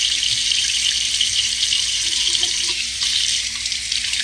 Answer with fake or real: fake